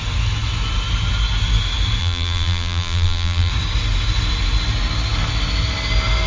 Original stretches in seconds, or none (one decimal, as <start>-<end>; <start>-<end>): 0.0-2.0; 3.5-6.3